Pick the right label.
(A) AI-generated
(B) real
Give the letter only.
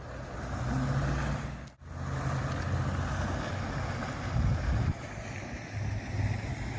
B